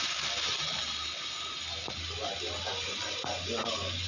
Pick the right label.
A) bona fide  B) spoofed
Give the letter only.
A